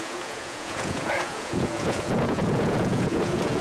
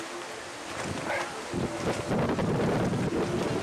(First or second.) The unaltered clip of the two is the second